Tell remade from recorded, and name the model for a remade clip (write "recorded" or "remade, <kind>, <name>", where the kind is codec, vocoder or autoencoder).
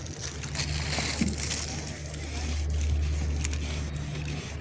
recorded